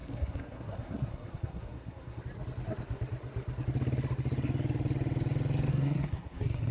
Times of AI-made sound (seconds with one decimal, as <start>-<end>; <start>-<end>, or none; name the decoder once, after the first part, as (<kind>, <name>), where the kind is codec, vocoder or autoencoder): 0.0-2.2 (codec, SNAC); 5.7-6.7